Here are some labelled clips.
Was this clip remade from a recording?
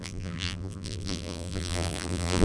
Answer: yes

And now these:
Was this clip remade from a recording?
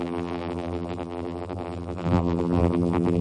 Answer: yes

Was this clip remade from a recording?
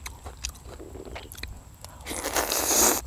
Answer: no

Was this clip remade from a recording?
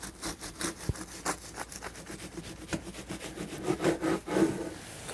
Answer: no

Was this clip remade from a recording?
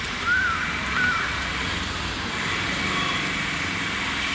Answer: no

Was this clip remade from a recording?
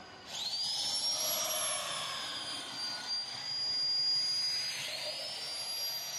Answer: no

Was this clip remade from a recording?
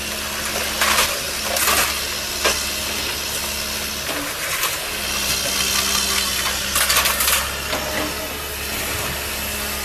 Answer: no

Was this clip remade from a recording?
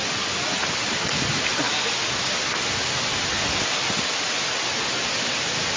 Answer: no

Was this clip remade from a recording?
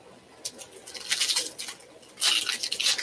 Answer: no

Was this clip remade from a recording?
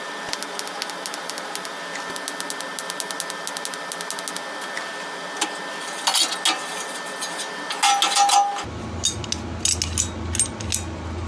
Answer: no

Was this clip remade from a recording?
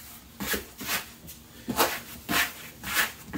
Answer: no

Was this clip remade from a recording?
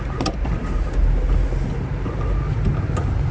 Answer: no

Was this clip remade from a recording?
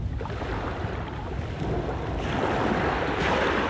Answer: yes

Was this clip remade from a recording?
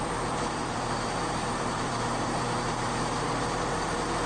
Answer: yes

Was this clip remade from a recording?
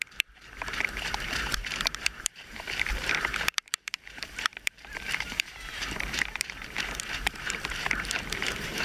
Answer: yes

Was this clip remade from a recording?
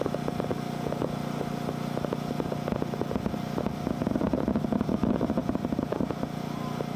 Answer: no